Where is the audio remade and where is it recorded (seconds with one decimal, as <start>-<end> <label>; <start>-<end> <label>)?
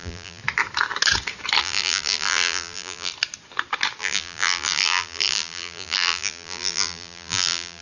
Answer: 0.0-0.4 remade; 0.4-1.6 recorded; 1.6-3.1 remade; 3.1-4.0 recorded; 4.0-7.8 remade